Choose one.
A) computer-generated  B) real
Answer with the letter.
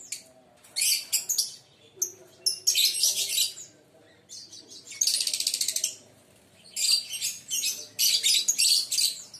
B